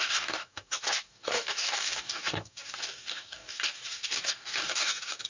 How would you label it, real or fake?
fake